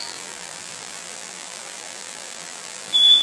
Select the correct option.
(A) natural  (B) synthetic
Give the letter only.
B